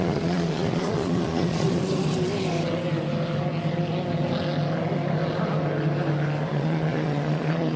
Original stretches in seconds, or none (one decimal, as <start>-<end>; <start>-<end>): 1.8-6.5